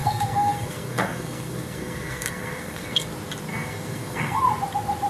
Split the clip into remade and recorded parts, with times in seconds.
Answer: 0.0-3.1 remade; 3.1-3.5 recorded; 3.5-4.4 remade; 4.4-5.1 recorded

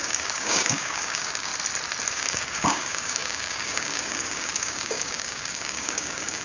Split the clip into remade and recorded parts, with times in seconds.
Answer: 0.0-1.5 remade; 1.5-2.1 recorded; 2.1-6.4 remade

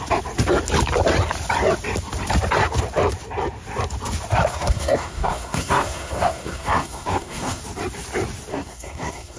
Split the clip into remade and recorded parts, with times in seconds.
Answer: 0.0-4.5 recorded; 4.5-7.6 remade; 7.6-8.5 recorded; 8.5-9.4 remade

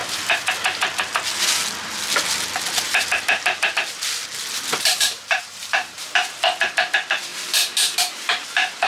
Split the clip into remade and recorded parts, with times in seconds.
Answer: 0.0-2.8 recorded; 2.8-4.2 remade; 4.2-4.8 recorded; 4.8-6.0 remade; 6.0-6.8 recorded; 6.8-8.9 remade

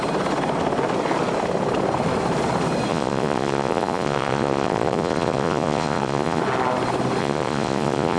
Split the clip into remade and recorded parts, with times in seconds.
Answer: 0.0-2.9 recorded; 2.9-6.4 remade; 6.4-7.2 recorded; 7.2-8.2 remade

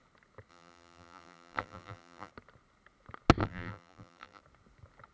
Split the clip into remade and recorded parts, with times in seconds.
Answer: 0.0-0.5 recorded; 0.5-2.3 remade; 2.3-3.4 recorded; 3.4-4.4 remade; 4.4-5.1 recorded